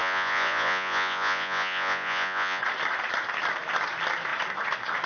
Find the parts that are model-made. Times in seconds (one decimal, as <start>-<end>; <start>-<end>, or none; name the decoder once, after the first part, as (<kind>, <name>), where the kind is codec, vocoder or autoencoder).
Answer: 0.0-2.6 (vocoder, Vocos)